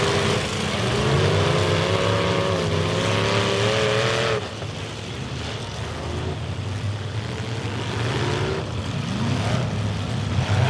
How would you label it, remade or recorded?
recorded